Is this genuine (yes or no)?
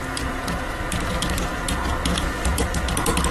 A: no